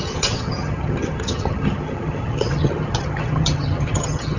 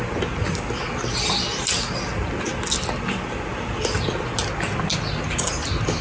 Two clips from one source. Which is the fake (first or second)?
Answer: first